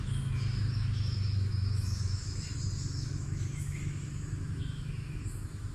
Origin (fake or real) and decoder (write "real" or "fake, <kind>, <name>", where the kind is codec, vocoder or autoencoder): fake, autoencoder, DAC-VAE